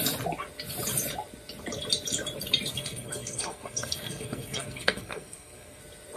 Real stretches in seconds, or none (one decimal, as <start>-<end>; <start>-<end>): 0.0-2.7; 5.8-6.2